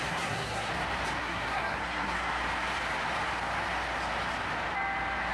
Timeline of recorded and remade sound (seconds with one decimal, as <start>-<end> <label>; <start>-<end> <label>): 0.0-0.7 remade; 0.7-1.2 recorded; 1.2-2.4 remade; 2.4-5.3 recorded

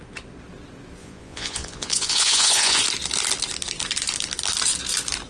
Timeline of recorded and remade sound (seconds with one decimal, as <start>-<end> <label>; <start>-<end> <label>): 0.0-1.0 recorded; 1.0-2.8 remade; 2.8-5.3 recorded

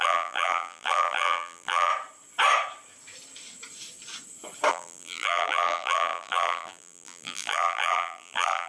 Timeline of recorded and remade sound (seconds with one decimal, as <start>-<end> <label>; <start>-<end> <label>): 0.0-1.9 remade; 1.9-4.7 recorded; 4.7-8.7 remade